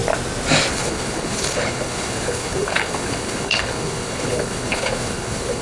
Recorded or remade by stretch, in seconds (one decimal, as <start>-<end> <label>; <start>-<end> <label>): 0.0-0.7 recorded; 0.7-5.6 remade